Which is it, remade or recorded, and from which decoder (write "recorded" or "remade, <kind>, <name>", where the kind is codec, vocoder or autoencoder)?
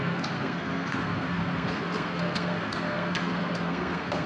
remade, codec, SNAC